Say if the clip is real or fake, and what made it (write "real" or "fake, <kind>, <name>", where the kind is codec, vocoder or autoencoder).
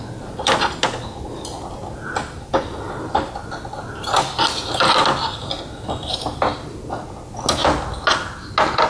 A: real